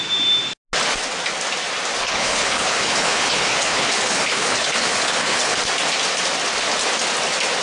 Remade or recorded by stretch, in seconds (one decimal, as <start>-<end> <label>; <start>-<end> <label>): 0.0-2.0 recorded; 2.0-5.6 remade; 5.6-7.6 recorded